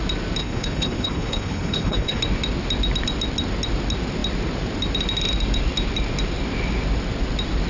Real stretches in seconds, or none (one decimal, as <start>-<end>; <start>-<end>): 0.0-0.4; 2.2-7.7